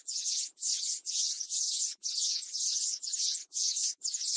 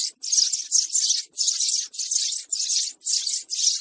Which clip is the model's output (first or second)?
first